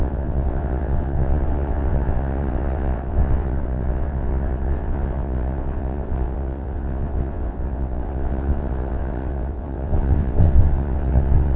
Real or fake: fake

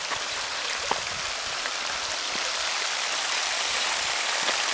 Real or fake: real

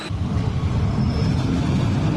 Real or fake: real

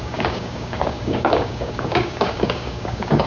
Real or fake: fake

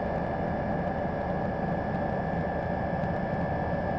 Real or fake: real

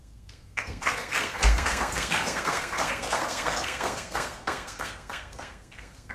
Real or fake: fake